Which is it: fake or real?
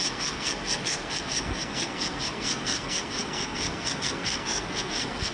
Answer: fake